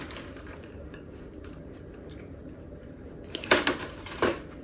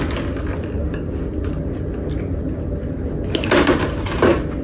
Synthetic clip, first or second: first